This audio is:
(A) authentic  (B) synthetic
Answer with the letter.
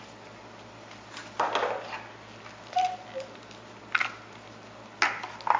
A